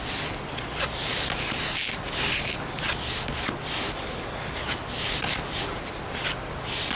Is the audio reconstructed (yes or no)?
no